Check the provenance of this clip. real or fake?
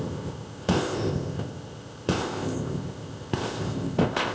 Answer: fake